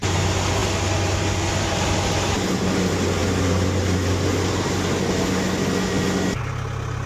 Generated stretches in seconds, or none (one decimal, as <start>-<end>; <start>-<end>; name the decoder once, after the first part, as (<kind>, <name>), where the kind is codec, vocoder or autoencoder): none